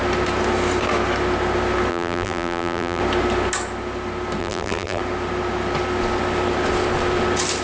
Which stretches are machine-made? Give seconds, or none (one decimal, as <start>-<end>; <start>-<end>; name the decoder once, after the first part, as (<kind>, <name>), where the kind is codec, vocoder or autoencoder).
1.9-3.0 (vocoder, BigVGAN v2); 4.4-5.0